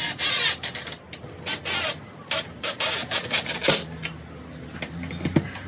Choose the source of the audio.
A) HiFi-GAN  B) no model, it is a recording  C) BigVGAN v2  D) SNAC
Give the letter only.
B